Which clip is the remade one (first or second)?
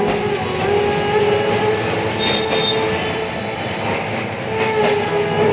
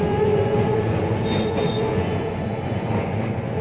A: second